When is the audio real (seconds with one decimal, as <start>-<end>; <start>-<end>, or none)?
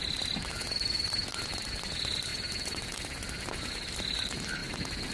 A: 0.0-5.1